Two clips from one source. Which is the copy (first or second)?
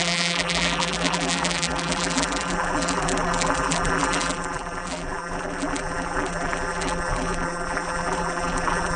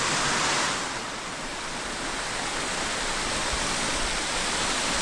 first